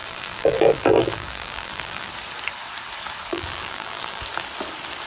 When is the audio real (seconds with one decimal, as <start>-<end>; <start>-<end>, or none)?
2.1-3.3; 4.2-5.1